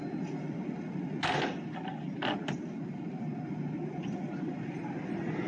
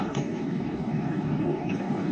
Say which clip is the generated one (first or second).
second